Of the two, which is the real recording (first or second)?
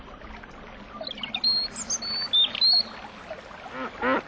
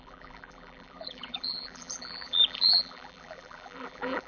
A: first